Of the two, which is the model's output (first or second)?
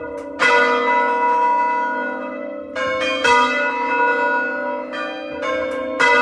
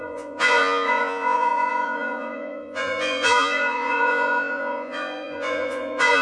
second